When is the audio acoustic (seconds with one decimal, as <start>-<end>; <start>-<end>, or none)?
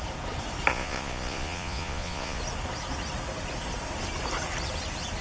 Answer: 0.0-0.7; 2.4-5.2